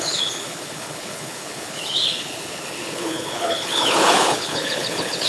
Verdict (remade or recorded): remade